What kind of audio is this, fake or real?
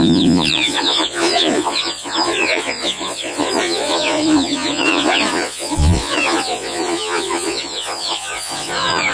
fake